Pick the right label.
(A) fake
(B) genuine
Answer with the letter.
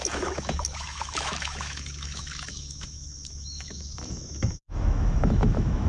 A